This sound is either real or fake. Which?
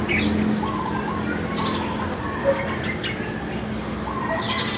real